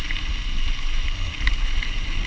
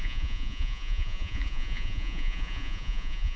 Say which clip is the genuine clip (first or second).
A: first